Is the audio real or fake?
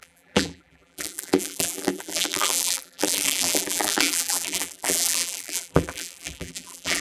fake